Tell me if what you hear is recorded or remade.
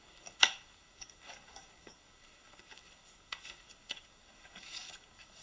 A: remade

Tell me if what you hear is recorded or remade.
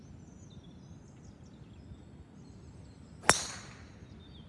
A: recorded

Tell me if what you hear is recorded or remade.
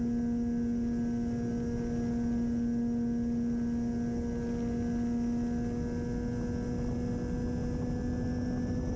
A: recorded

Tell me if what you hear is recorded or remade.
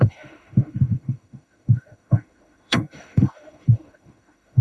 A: remade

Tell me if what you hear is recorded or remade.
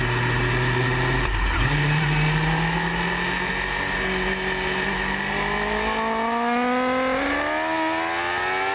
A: recorded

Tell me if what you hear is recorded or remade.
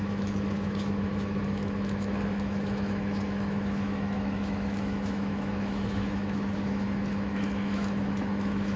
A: remade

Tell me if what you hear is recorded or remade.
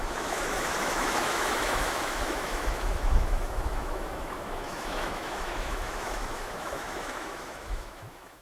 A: remade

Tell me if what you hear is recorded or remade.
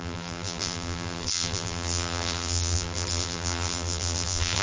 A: remade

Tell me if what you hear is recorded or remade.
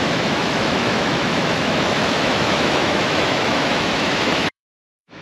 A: remade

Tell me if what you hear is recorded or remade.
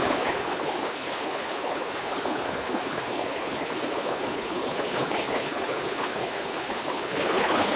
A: remade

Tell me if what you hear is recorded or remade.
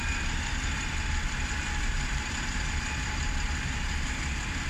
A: remade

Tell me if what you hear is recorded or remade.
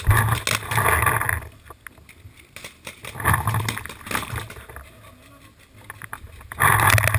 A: recorded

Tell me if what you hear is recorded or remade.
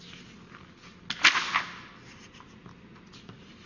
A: recorded